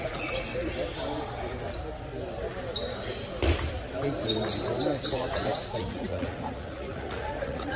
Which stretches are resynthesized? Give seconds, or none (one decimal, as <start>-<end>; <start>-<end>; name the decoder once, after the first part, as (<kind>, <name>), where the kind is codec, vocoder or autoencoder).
0.0-0.5 (vocoder, Vocos); 5.1-7.8